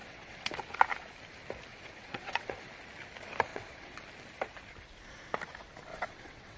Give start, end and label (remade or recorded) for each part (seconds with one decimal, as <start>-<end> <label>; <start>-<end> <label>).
0.0-0.5 remade; 0.5-1.7 recorded; 1.7-2.6 remade; 2.6-3.5 recorded; 3.5-4.0 remade; 4.0-5.9 recorded; 5.9-6.6 remade